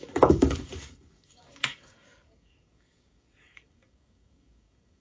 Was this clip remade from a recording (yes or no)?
yes